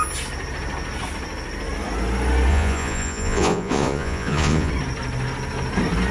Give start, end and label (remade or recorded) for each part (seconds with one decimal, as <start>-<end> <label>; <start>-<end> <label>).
0.0-2.5 recorded; 2.5-4.7 remade; 4.7-6.1 recorded